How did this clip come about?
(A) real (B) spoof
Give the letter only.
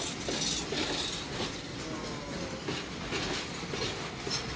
A